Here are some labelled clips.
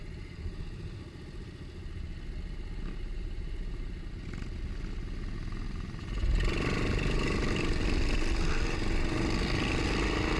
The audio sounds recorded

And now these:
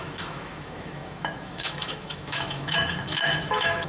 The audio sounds remade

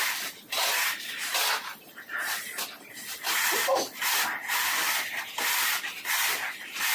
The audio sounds remade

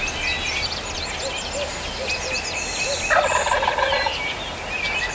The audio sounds recorded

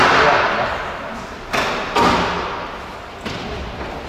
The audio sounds recorded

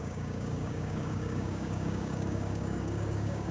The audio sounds remade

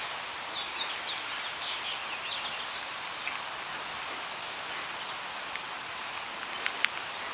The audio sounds recorded